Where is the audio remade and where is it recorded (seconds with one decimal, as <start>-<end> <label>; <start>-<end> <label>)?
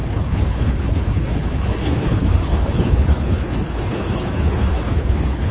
0.0-5.5 remade